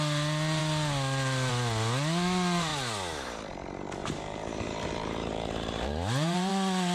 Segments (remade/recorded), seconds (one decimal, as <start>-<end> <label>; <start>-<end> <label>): 0.0-4.0 recorded; 4.0-6.5 remade; 6.5-6.9 recorded